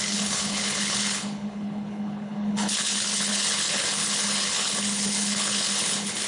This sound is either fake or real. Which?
fake